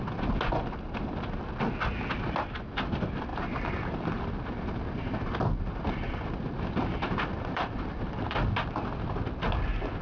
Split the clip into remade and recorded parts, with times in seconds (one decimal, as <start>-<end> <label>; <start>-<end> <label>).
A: 0.0-3.3 recorded; 3.3-4.2 remade; 4.2-7.3 recorded; 7.3-8.4 remade; 8.4-10.0 recorded